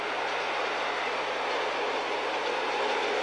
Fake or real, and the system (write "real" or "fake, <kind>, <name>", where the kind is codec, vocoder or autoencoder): real